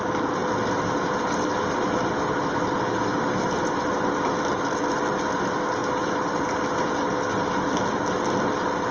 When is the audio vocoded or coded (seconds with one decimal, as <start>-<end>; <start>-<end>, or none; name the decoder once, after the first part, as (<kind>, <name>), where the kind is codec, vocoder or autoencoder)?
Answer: none